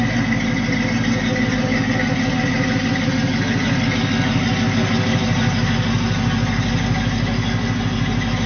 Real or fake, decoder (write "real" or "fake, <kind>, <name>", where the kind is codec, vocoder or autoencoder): real